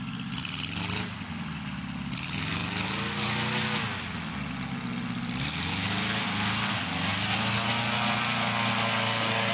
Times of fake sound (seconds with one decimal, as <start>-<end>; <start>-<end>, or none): none